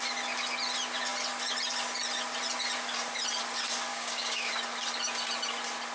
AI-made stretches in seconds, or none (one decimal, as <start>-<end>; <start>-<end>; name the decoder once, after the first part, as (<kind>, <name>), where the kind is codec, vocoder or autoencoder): 3.9-4.5 (codec, DAC)